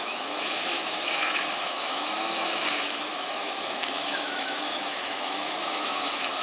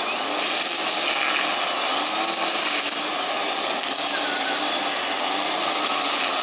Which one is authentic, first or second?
second